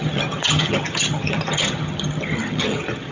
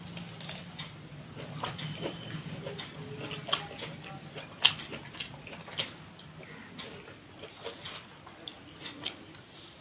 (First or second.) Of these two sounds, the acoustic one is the second